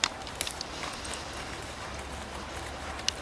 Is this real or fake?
real